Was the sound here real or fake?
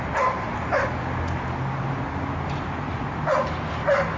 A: real